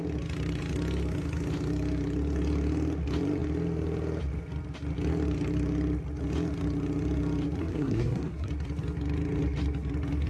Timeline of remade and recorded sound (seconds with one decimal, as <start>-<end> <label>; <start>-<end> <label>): 0.0-7.6 recorded; 7.6-8.5 remade; 8.5-10.3 recorded